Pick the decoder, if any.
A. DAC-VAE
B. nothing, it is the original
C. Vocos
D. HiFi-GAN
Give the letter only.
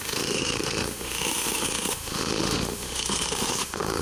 A